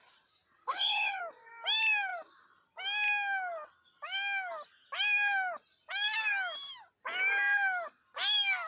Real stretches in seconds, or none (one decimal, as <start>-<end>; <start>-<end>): 0.0-0.6; 1.2-8.7